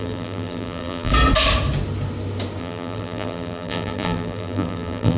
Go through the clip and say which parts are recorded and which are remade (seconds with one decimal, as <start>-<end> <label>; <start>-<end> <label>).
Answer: 0.0-1.1 remade; 1.1-2.6 recorded; 2.6-5.2 remade